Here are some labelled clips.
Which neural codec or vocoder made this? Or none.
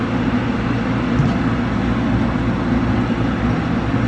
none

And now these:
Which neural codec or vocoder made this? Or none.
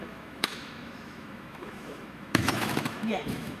autoencoder, DAC-VAE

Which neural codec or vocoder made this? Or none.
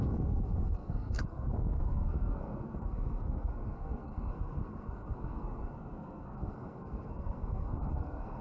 codec, SNAC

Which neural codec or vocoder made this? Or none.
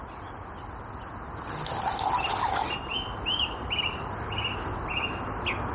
none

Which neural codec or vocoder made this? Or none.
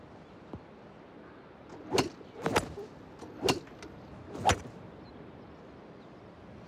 none